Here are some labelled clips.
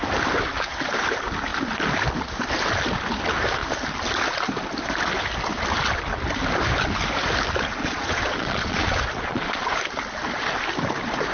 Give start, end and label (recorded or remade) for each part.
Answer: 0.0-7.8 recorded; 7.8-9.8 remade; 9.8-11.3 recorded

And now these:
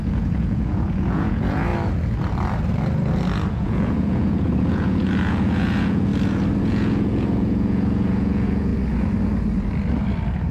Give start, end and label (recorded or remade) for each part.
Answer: 0.0-1.7 remade; 1.7-3.5 recorded; 3.5-6.1 remade; 6.1-6.6 recorded; 6.6-8.7 remade; 8.7-10.5 recorded

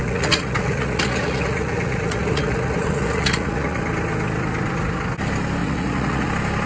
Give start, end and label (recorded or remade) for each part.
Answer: 0.0-3.8 remade; 3.8-5.6 recorded; 5.6-6.3 remade; 6.3-6.7 recorded

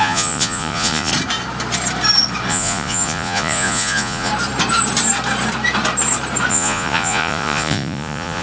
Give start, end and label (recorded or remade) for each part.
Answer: 0.0-1.1 remade; 1.1-2.5 recorded; 2.5-4.3 remade; 4.3-6.5 recorded; 6.5-8.4 remade

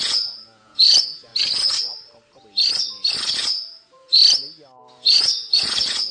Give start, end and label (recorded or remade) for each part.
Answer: 0.0-1.3 remade; 1.3-3.3 recorded; 3.3-4.2 remade; 4.2-4.8 recorded; 4.8-6.1 remade

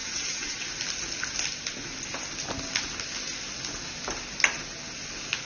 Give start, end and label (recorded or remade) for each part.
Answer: 0.0-0.7 remade; 0.7-5.5 recorded

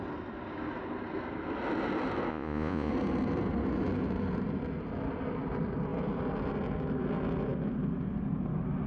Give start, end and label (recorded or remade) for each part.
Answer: 0.0-2.3 recorded; 2.3-2.9 remade; 2.9-8.9 recorded